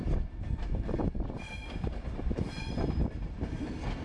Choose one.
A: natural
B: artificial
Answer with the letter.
B